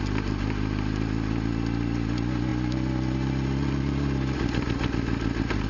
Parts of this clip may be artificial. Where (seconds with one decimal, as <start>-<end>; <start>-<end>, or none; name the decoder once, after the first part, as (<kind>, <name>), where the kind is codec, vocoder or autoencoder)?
none